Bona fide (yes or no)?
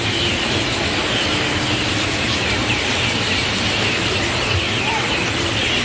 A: yes